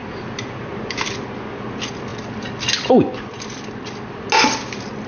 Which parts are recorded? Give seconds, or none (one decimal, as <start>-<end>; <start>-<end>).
0.0-5.1